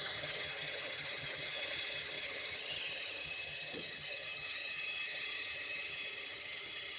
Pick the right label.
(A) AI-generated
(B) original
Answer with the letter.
A